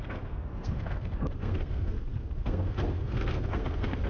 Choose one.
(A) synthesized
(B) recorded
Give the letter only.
A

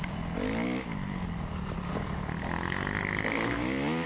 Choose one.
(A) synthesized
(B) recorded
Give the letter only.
B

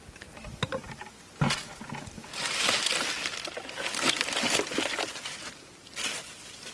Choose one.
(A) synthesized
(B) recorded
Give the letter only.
B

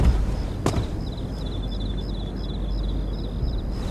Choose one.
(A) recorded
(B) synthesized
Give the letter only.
A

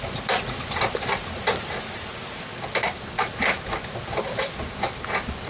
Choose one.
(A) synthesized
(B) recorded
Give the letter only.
B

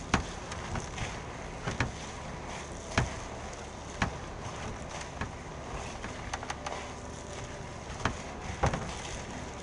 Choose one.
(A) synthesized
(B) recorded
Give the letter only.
B